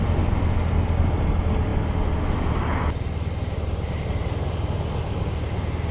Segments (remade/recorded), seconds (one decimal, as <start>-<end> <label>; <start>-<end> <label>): 0.0-5.9 recorded